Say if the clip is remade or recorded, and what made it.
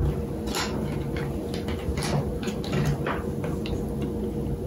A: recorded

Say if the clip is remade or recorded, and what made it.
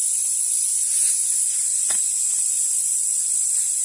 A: recorded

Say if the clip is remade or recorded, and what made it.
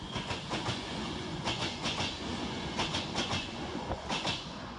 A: remade, vocoder, Vocos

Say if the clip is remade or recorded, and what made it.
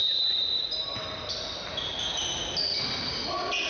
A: recorded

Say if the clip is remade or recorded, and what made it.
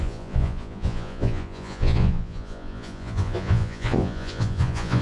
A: remade, vocoder, Vocos